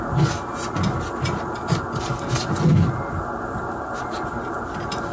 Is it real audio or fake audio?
real